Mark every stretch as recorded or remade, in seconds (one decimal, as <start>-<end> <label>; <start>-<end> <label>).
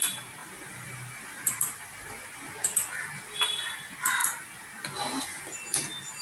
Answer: 0.0-0.4 recorded; 0.4-2.5 remade; 2.5-6.2 recorded